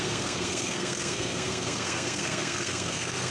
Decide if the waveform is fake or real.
fake